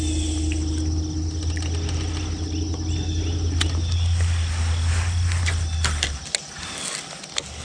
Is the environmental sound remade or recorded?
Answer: recorded